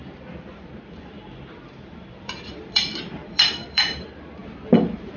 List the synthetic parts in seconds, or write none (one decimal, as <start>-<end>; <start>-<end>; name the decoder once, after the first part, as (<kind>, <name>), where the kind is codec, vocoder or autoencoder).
0.0-5.2 (vocoder, BigVGAN v2)